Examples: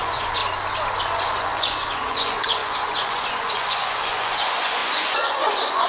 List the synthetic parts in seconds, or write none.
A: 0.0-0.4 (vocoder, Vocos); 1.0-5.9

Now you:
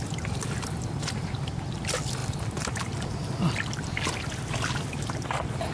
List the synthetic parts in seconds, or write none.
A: none

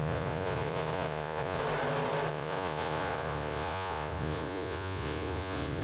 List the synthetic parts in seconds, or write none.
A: 0.0-1.6 (vocoder, Vocos); 2.3-5.8

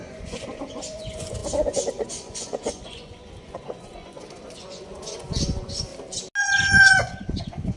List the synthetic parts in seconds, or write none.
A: 0.0-5.9 (vocoder, Vocos); 6.4-7.8